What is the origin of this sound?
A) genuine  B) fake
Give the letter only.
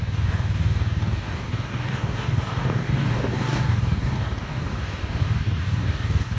B